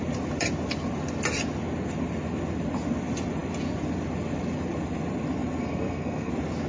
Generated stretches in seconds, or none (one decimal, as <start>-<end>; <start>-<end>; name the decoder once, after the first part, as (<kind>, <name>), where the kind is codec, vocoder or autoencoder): 5.6-6.3 (codec, SNAC)